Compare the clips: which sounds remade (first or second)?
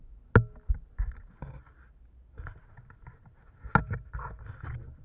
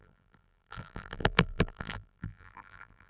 second